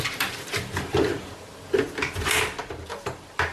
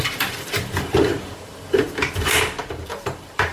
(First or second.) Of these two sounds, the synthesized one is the second